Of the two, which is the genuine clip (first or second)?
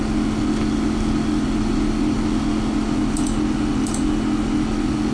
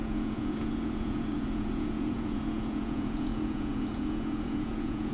first